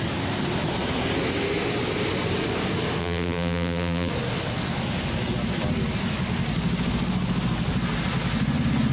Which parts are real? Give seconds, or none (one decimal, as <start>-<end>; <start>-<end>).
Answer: 0.0-3.0; 4.1-8.9